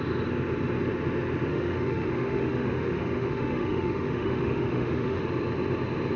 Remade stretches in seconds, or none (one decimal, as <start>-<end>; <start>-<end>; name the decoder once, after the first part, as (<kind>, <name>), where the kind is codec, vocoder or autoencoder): 1.5-5.2 (autoencoder, DAC-VAE)